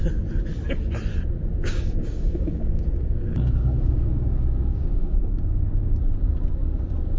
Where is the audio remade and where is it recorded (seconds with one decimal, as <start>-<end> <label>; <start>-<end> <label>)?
0.0-1.7 recorded; 1.7-6.0 remade; 6.0-7.2 recorded

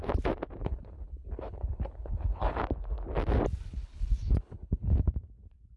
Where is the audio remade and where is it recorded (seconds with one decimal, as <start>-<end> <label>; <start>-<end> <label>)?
0.0-0.6 recorded; 0.6-2.6 remade; 2.6-3.7 recorded; 3.7-5.1 remade; 5.1-5.8 recorded

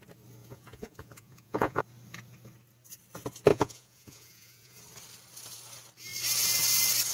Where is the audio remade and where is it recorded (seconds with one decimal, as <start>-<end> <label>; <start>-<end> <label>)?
0.0-0.4 recorded; 0.4-1.8 remade; 1.8-3.5 recorded; 3.5-4.8 remade; 4.8-7.1 recorded

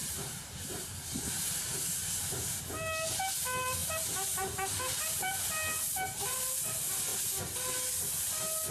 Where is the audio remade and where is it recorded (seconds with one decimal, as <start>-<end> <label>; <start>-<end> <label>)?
0.0-2.6 remade; 2.6-3.8 recorded; 3.8-6.6 remade; 6.6-8.7 recorded

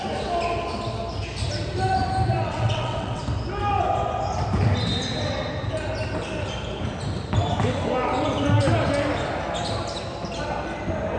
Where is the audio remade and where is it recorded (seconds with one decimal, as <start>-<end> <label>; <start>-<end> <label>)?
0.0-2.4 recorded; 2.4-3.2 remade; 3.2-11.2 recorded

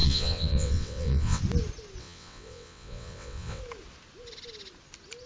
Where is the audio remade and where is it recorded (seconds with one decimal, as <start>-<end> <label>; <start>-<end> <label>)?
0.0-1.4 remade; 1.4-2.0 recorded; 2.0-3.6 remade; 3.6-5.3 recorded